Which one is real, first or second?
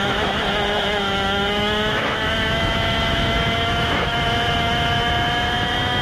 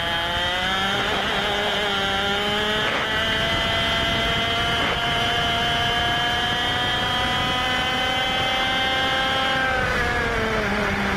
second